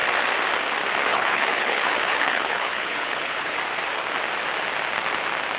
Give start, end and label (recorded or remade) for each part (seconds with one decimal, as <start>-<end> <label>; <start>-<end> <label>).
0.0-1.1 recorded; 1.1-3.6 remade; 3.6-5.6 recorded